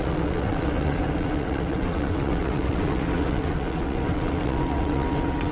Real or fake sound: fake